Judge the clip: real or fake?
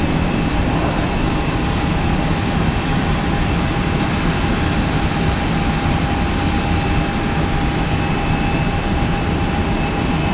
real